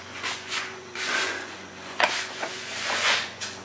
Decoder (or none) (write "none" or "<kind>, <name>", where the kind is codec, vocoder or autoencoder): vocoder, Vocos